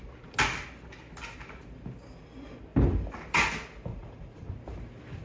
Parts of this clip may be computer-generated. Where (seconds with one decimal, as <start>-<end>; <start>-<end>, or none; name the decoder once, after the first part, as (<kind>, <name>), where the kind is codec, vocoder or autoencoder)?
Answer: 3.9-4.6 (vocoder, Vocos)